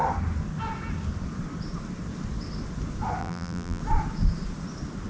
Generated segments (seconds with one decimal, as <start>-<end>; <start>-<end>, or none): 3.2-3.8